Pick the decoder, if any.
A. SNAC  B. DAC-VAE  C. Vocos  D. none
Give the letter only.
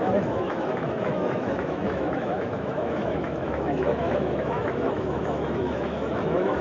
B